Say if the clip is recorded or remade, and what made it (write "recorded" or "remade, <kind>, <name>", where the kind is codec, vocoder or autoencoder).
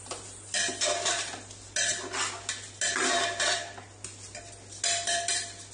recorded